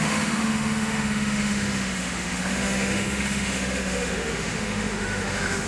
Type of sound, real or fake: fake